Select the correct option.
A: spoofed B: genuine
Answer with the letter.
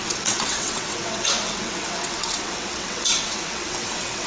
A